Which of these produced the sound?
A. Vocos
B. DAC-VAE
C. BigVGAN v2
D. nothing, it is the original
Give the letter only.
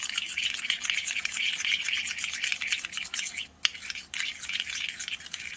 D